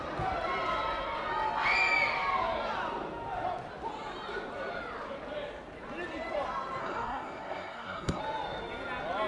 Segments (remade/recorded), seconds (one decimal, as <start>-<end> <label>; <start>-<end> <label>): 0.0-6.8 recorded; 6.8-8.2 remade; 8.2-9.3 recorded